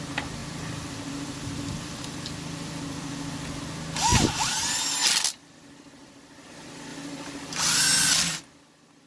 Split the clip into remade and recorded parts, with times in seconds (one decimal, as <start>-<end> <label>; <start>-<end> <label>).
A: 0.0-0.4 recorded; 0.4-3.6 remade; 3.6-4.1 recorded; 4.1-4.8 remade; 4.8-6.9 recorded; 6.9-7.8 remade; 7.8-9.1 recorded